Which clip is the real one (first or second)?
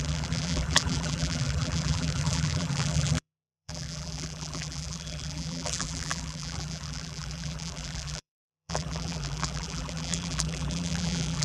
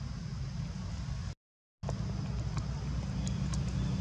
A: second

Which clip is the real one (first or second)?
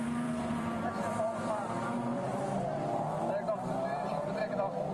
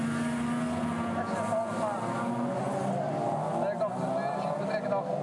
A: second